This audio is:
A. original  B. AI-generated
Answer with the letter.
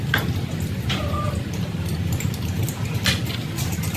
A